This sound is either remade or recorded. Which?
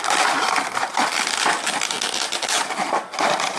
recorded